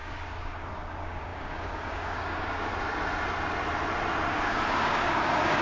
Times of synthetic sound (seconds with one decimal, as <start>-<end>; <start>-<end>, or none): 0.0-2.7; 4.3-5.6